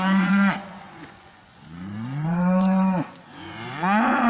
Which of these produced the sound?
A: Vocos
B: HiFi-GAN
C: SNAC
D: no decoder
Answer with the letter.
A